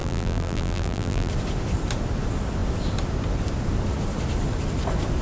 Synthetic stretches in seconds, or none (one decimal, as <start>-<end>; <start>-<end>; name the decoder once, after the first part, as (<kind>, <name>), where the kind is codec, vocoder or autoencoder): 0.0-1.3 (vocoder, BigVGAN v2)